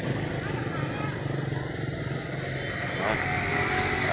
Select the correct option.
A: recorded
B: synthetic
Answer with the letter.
A